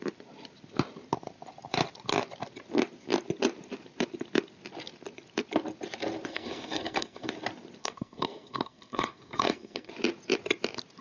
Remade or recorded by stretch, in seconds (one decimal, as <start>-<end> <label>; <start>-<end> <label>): 0.0-6.3 recorded; 6.3-7.3 remade; 7.3-7.8 recorded; 7.8-9.9 remade; 9.9-11.0 recorded